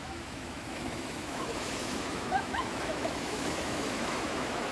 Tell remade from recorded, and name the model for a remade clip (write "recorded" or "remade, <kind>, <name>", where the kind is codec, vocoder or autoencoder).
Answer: remade, autoencoder, DAC-VAE